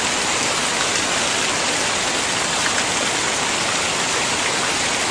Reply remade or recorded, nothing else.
recorded